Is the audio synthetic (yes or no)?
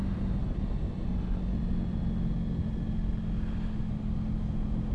no